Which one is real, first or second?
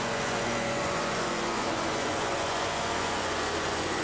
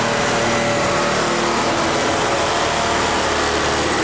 second